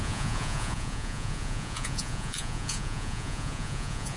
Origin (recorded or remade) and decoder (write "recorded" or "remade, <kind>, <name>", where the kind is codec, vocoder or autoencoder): remade, vocoder, Vocos